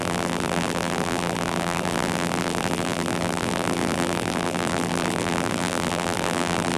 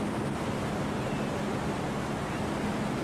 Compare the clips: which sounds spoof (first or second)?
first